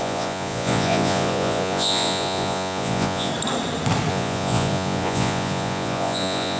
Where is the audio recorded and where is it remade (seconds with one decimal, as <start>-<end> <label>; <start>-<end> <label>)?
0.0-3.3 remade; 3.3-4.1 recorded; 4.1-6.6 remade